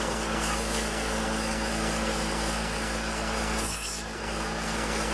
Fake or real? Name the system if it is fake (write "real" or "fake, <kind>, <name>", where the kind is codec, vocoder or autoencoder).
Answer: fake, codec, SNAC